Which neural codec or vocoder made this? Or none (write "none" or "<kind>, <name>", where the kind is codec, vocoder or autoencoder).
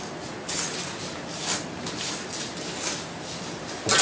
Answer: none